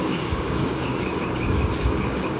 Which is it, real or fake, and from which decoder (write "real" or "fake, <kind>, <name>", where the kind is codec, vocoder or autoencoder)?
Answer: fake, codec, DAC